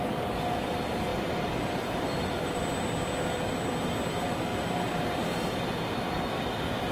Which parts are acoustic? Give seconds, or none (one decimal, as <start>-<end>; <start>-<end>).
0.0-1.1; 2.6-6.9